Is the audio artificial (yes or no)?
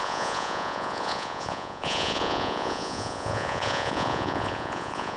yes